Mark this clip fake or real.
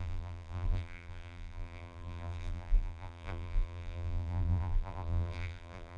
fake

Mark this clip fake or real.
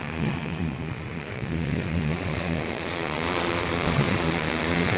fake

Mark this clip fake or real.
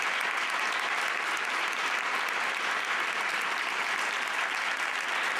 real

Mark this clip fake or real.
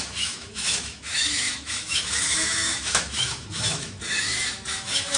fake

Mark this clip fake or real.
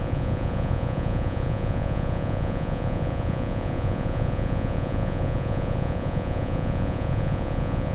fake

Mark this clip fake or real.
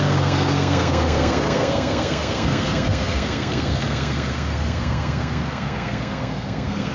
fake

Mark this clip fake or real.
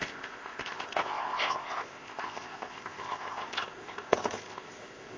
fake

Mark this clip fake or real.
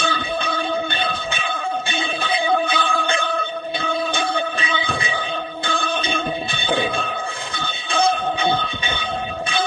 fake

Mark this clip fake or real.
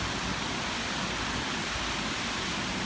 real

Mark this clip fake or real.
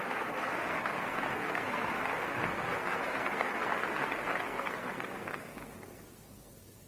fake